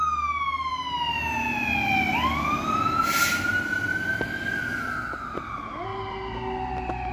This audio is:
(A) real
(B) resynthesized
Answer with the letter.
A